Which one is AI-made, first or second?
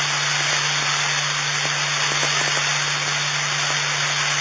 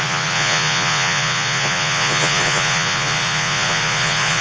second